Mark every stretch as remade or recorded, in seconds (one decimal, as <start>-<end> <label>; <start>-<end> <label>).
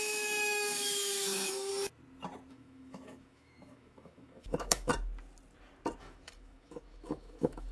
0.0-1.7 remade; 1.7-2.5 recorded; 2.5-4.9 remade; 4.9-6.0 recorded; 6.0-7.7 remade